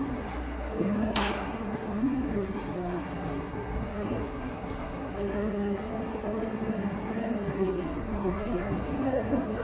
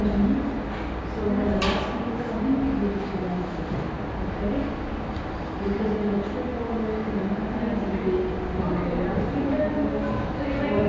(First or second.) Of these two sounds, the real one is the second